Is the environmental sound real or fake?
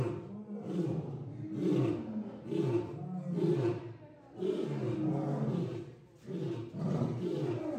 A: real